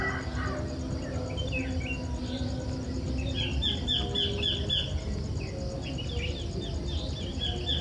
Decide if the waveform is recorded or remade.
recorded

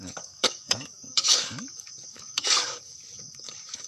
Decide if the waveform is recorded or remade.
remade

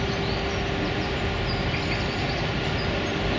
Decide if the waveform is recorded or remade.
recorded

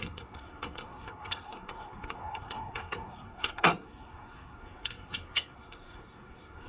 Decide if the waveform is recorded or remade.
remade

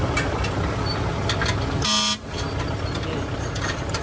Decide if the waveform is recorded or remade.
recorded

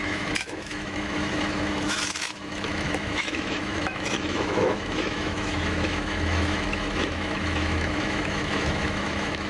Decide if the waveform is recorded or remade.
remade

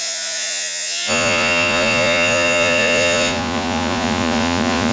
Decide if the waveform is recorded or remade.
remade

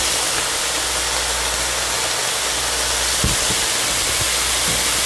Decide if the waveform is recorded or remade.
recorded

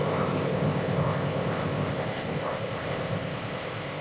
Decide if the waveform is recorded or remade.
remade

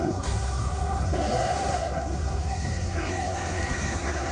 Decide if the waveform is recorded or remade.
remade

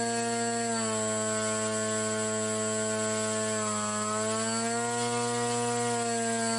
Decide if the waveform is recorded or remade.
recorded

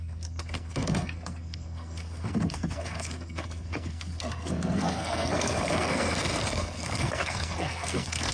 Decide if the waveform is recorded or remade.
remade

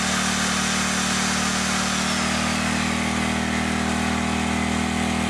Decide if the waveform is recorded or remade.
recorded